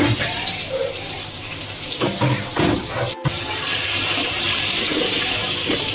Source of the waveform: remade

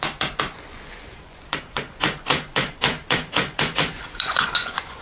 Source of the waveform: remade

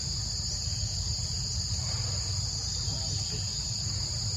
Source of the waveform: recorded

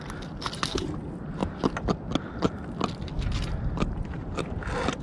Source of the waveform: recorded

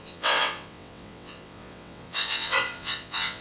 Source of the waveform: remade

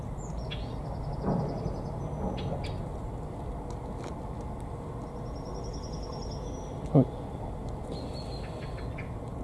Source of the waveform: recorded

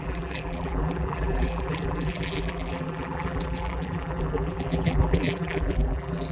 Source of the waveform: remade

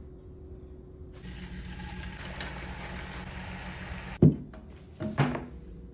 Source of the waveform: recorded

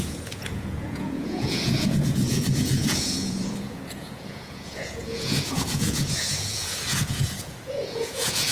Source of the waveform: remade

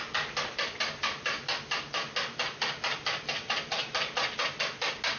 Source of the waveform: recorded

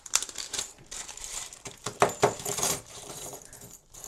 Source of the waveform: remade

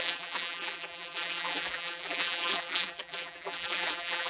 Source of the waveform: remade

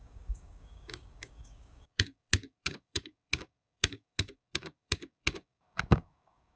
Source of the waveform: remade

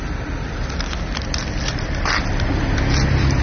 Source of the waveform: recorded